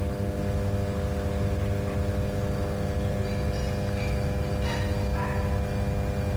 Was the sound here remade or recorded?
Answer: recorded